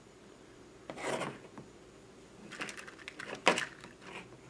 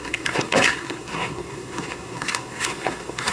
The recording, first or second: first